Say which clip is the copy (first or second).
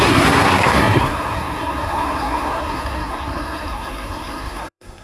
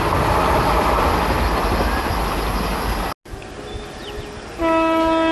first